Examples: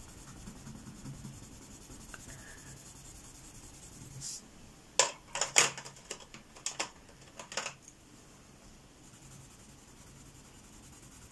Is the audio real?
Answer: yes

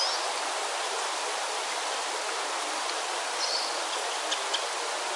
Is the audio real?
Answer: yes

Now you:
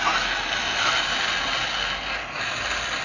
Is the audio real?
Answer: yes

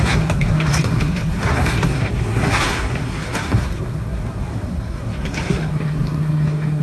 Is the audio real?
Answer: no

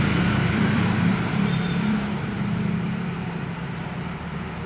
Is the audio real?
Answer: no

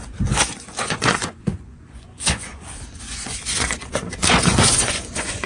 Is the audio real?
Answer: no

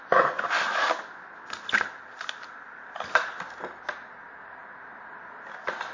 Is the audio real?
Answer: yes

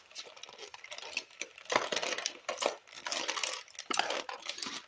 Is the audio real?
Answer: yes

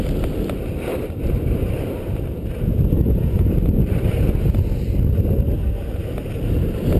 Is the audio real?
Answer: yes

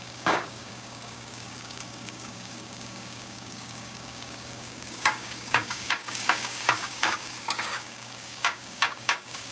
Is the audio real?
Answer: no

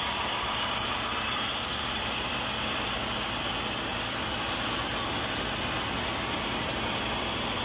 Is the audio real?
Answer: yes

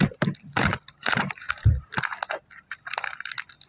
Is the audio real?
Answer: yes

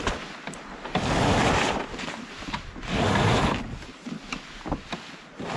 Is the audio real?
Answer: yes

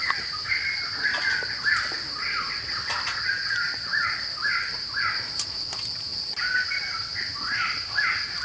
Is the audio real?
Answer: yes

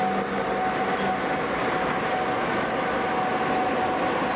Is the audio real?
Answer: yes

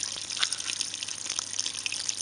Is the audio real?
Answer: yes